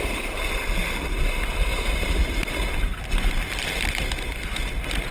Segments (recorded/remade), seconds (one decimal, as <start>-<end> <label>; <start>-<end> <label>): 0.0-5.1 recorded